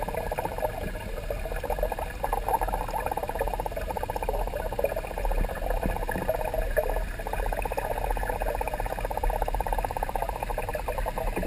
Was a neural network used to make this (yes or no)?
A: no